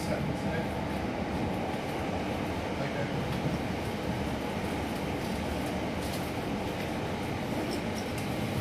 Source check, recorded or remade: recorded